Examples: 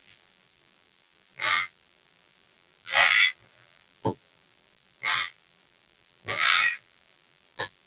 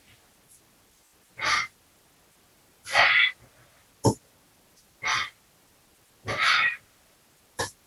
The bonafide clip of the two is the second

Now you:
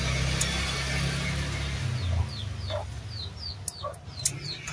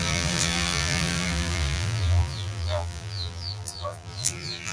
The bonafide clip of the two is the first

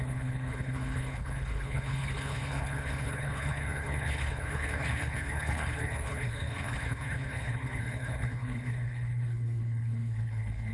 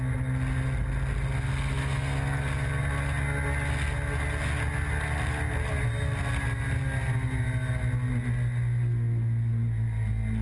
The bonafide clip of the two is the second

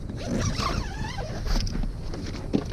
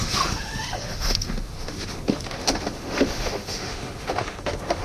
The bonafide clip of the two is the first